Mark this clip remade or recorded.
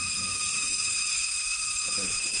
remade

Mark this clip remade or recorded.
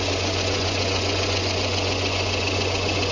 remade